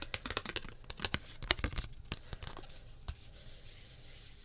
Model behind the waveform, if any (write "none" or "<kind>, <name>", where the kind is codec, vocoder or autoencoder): none